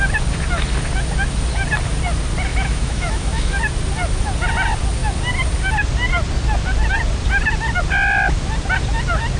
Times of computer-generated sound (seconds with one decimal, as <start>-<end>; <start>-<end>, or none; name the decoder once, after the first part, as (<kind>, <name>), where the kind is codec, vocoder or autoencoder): 2.5-3.6 (autoencoder, DAC-VAE)